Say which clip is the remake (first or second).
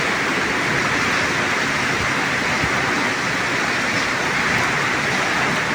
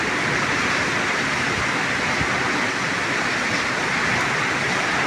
second